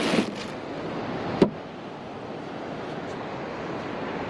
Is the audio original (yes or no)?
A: yes